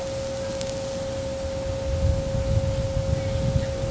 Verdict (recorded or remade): recorded